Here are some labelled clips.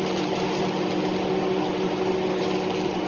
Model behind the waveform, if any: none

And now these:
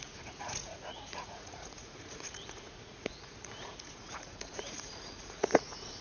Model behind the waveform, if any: vocoder, Vocos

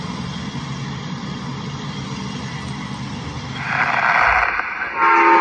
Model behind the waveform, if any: none